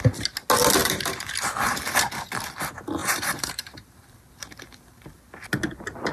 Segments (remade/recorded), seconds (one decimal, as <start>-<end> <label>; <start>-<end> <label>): 0.0-0.8 recorded; 0.8-1.3 remade; 1.3-3.0 recorded; 3.0-5.2 remade; 5.2-6.1 recorded